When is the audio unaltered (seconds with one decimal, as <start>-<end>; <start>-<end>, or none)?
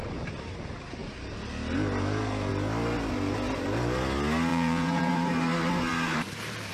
0.0-4.5; 5.1-6.7